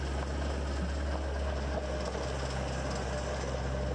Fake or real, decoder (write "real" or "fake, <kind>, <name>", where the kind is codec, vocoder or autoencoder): real